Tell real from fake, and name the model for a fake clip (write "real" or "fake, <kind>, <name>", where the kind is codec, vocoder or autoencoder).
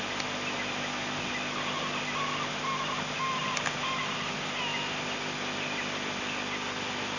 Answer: real